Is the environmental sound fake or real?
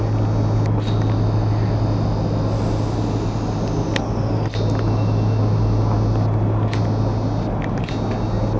real